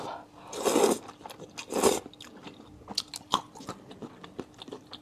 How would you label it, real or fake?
real